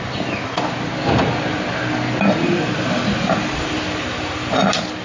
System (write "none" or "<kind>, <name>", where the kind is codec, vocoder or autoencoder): none